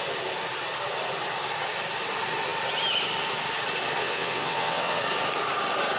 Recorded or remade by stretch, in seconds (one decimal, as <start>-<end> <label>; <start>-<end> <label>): 0.0-4.0 recorded; 4.0-5.0 remade; 5.0-6.0 recorded